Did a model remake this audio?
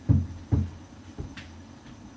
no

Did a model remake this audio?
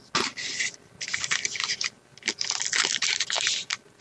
no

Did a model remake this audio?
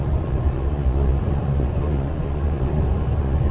yes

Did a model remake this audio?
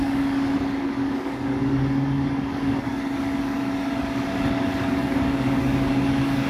yes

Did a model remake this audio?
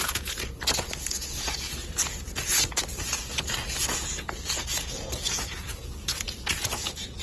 yes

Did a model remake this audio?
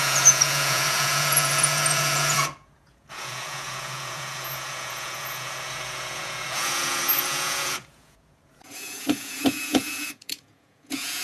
yes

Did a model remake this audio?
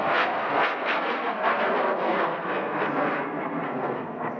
yes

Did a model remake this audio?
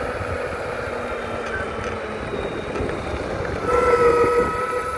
no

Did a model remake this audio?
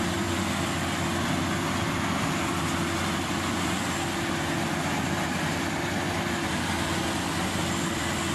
no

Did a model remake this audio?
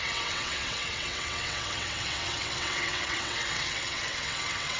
yes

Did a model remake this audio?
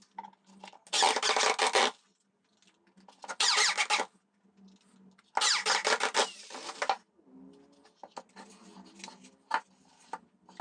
no